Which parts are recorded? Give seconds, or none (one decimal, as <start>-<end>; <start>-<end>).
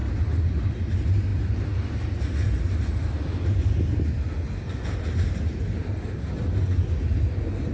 0.0-7.7